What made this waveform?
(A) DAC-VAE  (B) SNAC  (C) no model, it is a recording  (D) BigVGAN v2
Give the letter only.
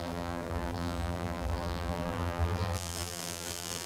D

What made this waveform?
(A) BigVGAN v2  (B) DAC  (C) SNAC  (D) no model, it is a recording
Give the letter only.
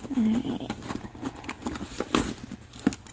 D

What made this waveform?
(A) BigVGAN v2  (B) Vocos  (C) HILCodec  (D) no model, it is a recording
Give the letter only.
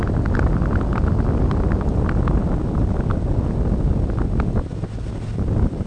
D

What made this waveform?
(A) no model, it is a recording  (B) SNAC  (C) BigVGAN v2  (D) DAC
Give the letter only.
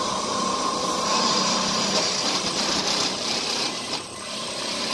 C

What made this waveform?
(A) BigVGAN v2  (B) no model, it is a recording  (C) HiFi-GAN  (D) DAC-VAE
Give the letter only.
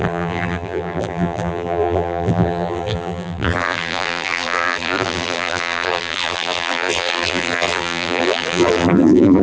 A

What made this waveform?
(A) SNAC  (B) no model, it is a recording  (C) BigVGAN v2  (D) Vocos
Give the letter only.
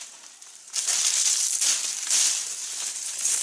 B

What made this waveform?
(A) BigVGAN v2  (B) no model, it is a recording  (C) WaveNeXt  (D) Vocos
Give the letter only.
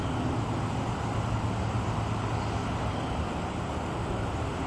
B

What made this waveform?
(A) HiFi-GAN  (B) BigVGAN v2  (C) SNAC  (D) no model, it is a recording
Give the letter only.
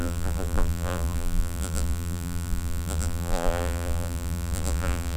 B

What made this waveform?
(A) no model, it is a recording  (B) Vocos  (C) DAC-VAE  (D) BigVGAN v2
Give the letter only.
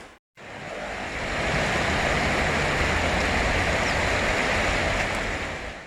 A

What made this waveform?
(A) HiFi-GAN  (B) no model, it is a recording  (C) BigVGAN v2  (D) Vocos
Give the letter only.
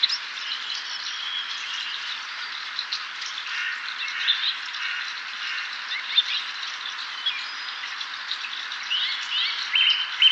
B